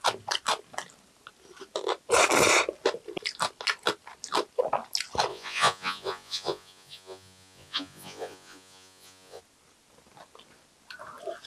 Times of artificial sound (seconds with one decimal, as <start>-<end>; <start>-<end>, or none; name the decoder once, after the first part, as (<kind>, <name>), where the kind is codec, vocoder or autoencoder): 5.3-9.4 (vocoder, Vocos)